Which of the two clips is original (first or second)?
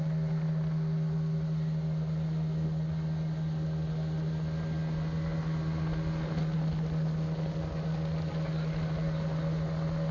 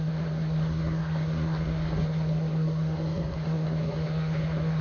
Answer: first